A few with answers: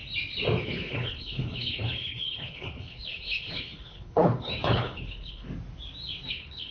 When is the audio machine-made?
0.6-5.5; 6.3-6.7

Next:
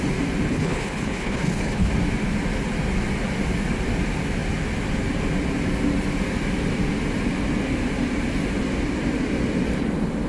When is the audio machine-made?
0.5-1.9

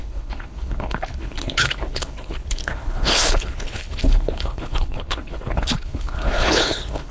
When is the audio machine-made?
0.0-7.1

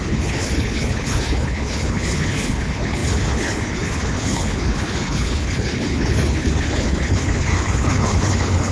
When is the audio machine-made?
0.0-8.7

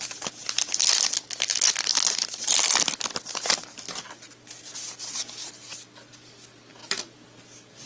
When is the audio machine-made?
none

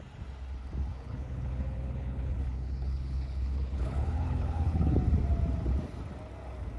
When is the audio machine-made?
0.9-5.0

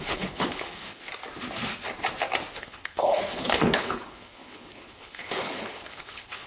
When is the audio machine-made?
0.0-1.1; 2.5-6.5

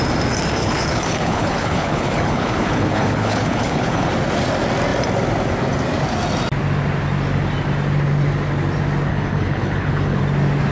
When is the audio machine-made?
0.6-4.1; 9.1-10.2